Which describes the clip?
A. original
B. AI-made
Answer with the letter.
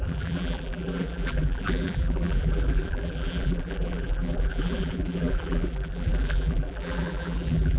B